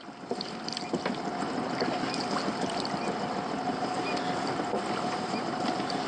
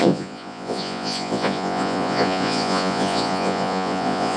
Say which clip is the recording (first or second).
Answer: first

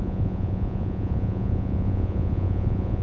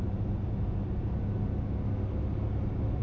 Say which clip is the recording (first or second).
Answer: second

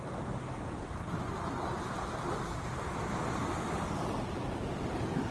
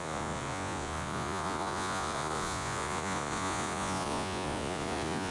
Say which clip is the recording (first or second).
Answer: first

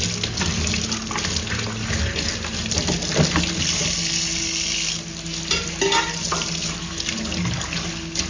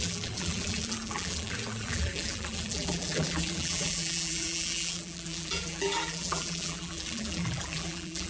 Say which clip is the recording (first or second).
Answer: first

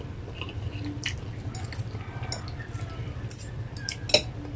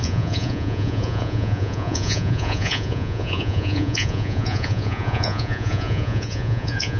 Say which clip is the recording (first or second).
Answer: first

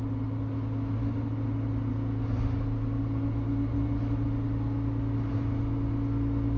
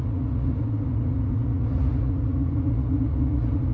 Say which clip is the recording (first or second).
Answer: first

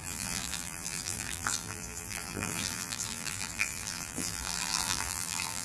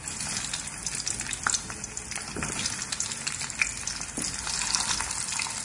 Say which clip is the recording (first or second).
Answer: second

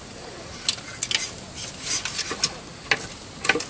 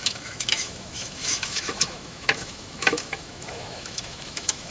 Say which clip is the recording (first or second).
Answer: first